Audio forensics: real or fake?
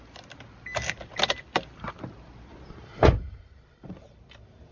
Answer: real